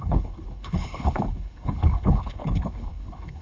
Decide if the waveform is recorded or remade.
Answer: remade